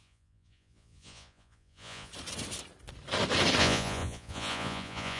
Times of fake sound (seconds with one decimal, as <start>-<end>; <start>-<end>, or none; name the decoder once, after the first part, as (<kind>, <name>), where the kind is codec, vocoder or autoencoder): 0.0-2.1 (vocoder, Vocos); 3.6-5.2